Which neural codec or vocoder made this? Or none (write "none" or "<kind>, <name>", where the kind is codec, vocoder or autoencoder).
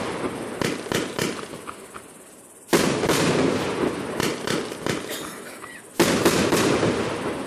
none